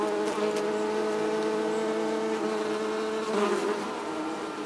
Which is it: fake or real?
real